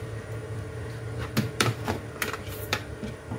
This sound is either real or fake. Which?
fake